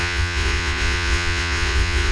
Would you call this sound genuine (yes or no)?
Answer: no